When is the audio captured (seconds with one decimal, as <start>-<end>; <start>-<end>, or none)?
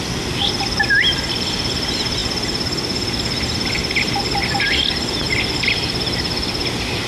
0.0-7.1